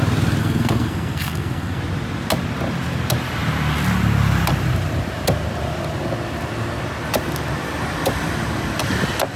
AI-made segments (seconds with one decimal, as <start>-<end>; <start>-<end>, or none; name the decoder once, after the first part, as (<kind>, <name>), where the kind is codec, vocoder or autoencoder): 0.4-1.8 (codec, SNAC)